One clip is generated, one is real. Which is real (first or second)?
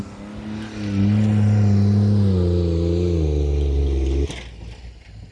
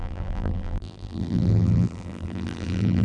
first